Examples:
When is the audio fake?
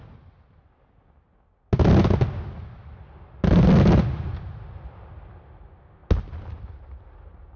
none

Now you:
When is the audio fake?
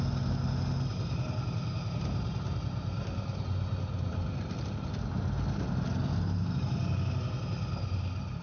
0.9-4.9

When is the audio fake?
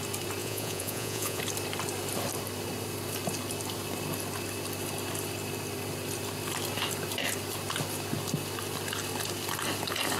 0.4-1.4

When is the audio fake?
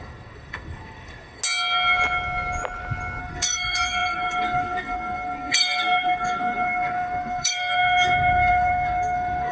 0.0-1.4; 3.2-9.5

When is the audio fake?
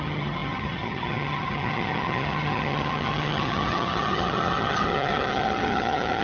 0.0-6.2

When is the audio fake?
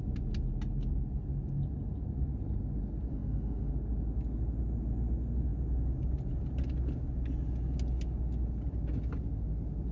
3.1-3.7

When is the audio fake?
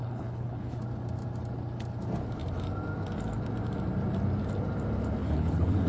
0.0-0.8; 5.2-5.9